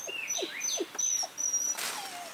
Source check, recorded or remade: recorded